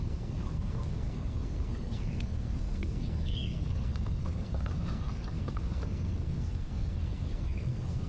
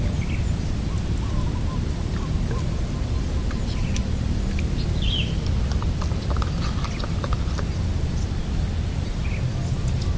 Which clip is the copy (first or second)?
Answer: first